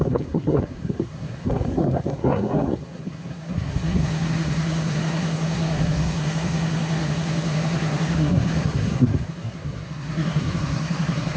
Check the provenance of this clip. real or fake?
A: fake